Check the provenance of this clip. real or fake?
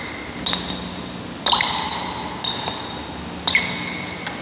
real